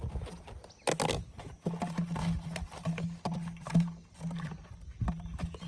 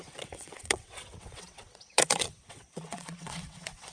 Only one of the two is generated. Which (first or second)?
second